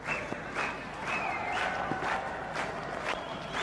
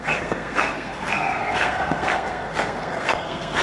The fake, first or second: second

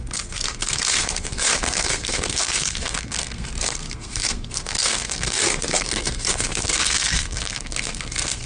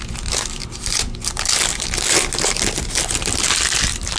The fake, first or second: first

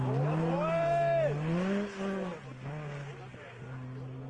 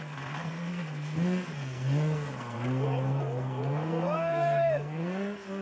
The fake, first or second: second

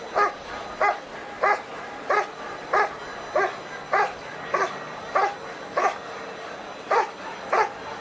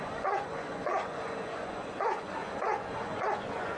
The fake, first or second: second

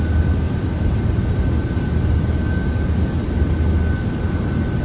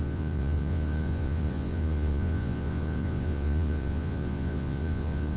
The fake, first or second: second